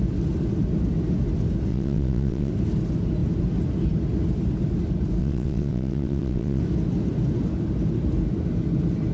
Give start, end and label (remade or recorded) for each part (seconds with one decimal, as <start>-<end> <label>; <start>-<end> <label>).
0.0-1.7 recorded; 1.7-2.5 remade; 2.5-5.2 recorded; 5.2-6.6 remade; 6.6-9.1 recorded